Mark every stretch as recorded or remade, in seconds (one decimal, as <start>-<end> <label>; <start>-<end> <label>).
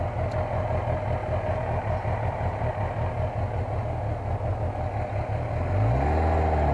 0.0-6.7 recorded